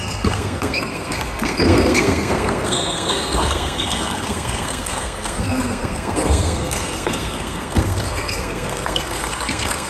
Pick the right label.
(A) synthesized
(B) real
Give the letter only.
A